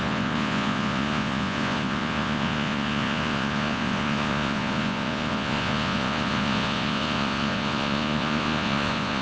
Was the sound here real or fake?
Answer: fake